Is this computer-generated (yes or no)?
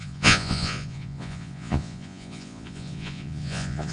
yes